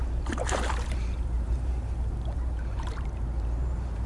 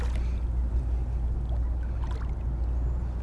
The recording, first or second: second